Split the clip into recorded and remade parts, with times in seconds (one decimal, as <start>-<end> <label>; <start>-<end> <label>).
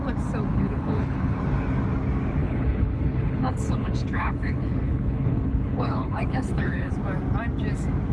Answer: 0.0-0.5 recorded; 0.5-1.4 remade; 1.4-2.4 recorded; 2.4-6.9 remade; 6.9-8.1 recorded